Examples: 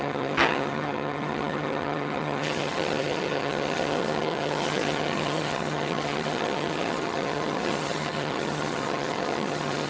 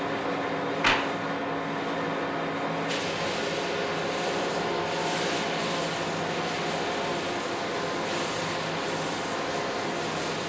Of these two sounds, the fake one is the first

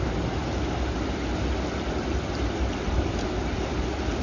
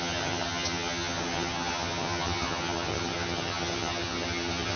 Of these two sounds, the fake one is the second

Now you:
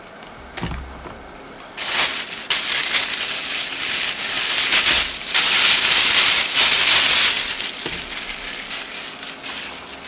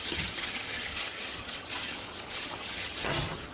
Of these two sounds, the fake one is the second